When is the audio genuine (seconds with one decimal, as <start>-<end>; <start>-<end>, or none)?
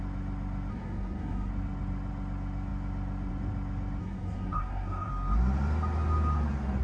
0.0-0.7; 1.5-4.0; 5.1-6.8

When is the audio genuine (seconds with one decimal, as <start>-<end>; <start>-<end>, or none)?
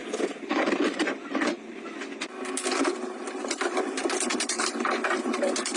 none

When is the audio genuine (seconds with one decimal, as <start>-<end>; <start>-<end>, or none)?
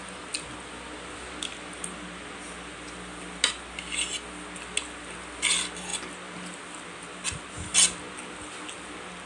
0.0-9.3